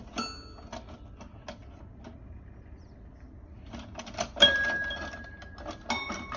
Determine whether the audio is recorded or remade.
recorded